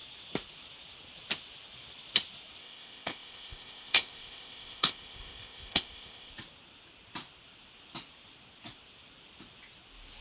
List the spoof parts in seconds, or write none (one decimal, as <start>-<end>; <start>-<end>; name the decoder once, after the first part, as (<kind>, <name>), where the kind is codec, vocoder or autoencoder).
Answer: 2.6-6.3 (codec, ZipCodec)